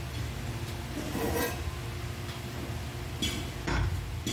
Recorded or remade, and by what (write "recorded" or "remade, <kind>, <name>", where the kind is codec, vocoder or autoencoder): recorded